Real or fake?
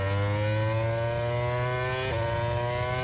real